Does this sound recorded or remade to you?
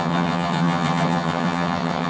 remade